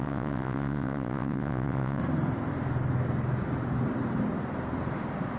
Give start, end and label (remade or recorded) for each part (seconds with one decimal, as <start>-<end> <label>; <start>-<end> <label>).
0.0-2.0 remade; 2.0-5.4 recorded